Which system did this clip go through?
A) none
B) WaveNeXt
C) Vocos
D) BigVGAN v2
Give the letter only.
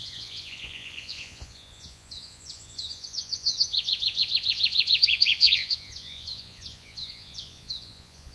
C